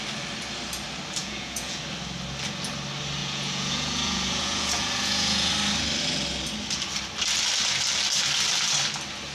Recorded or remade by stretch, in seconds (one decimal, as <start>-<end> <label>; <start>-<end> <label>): 0.0-1.2 recorded; 1.2-1.8 remade; 1.8-3.2 recorded; 3.2-5.5 remade; 5.5-9.3 recorded